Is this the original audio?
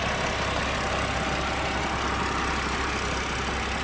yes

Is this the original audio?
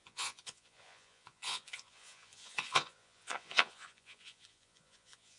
no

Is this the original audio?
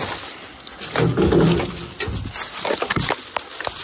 yes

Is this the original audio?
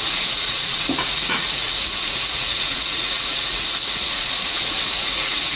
no